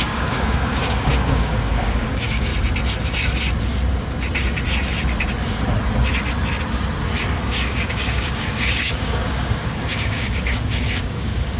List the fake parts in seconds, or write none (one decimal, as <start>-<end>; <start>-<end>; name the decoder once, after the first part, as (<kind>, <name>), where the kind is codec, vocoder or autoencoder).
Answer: 0.0-2.5 (codec, DAC); 7.4-11.6